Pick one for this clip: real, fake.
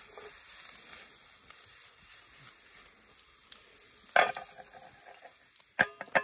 real